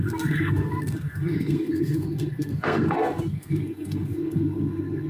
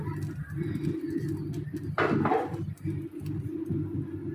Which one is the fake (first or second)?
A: first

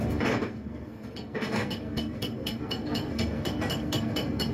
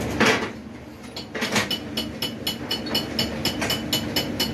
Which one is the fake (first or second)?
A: first